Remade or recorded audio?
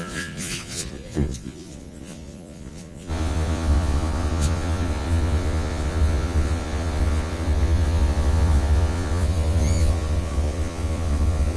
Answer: remade